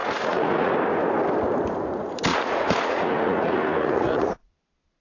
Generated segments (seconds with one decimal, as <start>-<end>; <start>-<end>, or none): 0.0-0.7; 2.3-4.5